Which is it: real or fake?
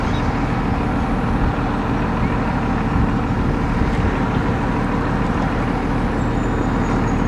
real